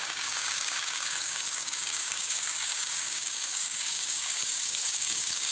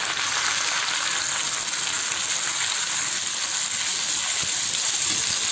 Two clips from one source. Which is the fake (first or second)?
first